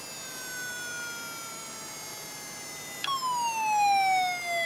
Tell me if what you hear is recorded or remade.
recorded